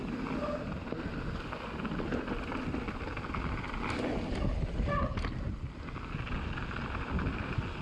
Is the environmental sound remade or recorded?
recorded